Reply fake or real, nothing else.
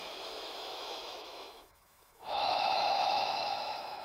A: fake